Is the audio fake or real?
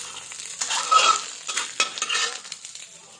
real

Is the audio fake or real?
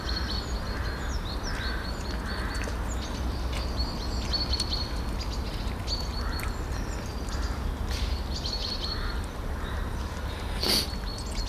real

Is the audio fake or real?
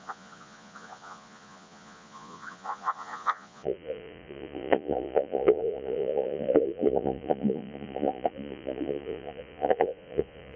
fake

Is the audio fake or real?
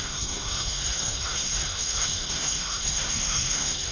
fake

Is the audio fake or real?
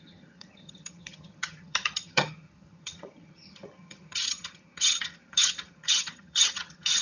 fake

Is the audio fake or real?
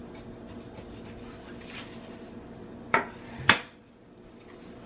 fake